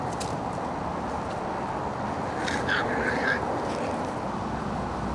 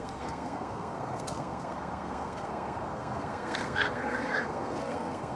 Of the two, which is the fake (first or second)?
second